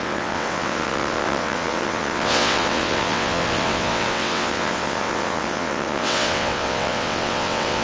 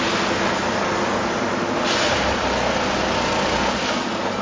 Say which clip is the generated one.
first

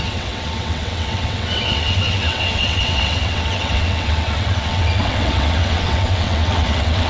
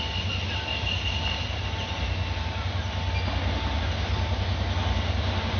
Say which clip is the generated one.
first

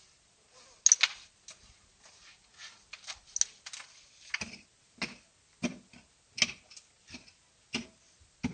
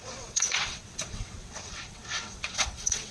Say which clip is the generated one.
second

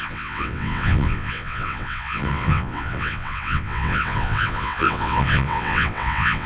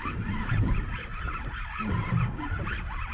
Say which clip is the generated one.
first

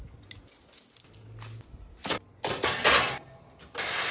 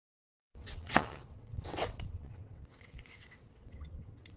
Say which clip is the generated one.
second